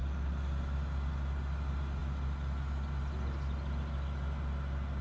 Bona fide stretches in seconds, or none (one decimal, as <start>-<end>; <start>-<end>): 0.0-5.0